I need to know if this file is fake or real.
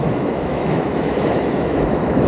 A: fake